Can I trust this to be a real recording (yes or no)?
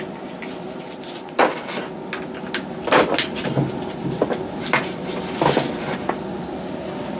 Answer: yes